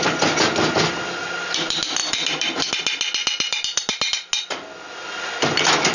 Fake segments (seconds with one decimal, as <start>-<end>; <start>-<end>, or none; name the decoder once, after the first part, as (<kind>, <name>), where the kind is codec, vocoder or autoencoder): 2.0-2.7 (vocoder, BigVGAN v2)